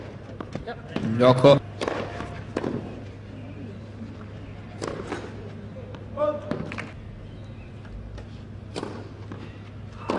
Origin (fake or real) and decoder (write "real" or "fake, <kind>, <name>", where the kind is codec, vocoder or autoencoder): real